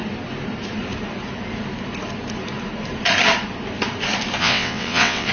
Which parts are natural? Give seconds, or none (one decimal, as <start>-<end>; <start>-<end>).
0.0-4.4